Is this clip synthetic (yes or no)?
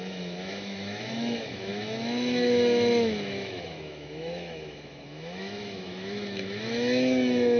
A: yes